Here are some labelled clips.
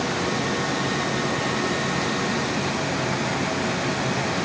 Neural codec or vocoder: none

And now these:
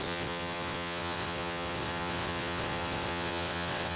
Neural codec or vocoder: vocoder, WaveNeXt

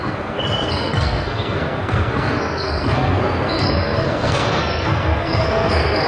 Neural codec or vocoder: codec, SNAC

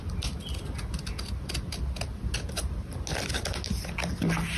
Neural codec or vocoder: none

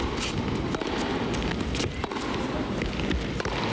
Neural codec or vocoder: none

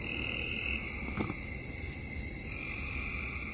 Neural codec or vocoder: none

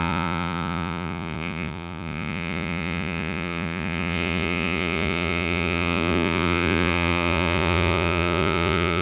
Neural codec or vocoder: vocoder, Vocos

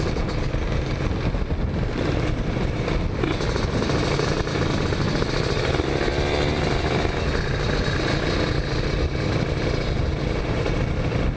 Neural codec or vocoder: none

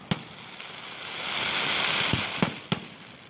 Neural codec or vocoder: none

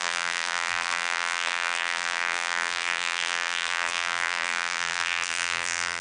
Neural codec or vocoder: vocoder, BigVGAN v2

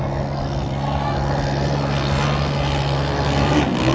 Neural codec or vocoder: none